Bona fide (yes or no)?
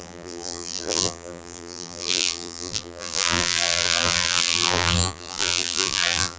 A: no